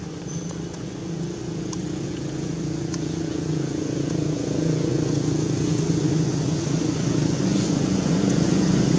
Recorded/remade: remade